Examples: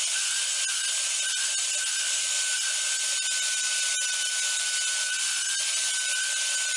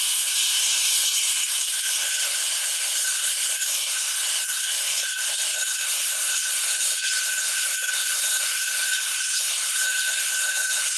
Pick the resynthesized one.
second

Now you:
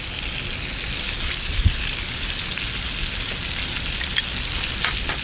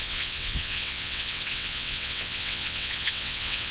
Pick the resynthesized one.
second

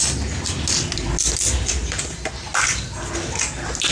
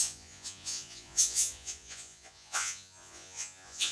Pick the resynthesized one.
second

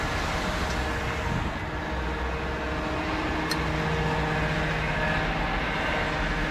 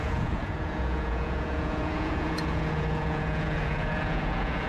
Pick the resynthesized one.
second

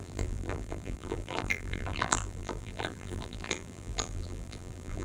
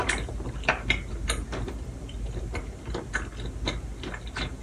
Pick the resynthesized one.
first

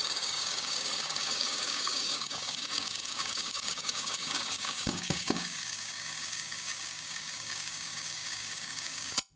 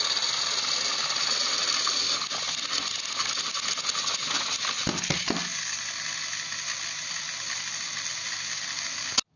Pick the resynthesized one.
first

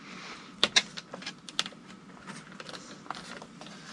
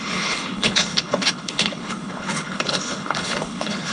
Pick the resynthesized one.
second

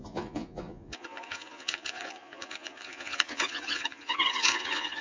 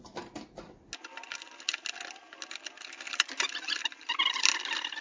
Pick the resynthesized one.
first